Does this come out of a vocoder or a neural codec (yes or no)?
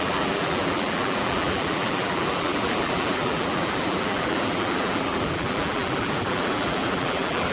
yes